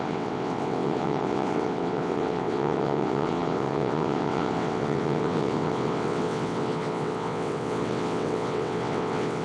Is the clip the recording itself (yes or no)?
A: no